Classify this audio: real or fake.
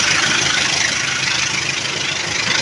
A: real